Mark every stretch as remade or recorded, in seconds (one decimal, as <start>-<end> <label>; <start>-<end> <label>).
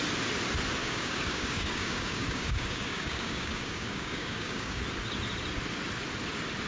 0.0-0.8 recorded; 0.8-4.8 remade; 4.8-6.7 recorded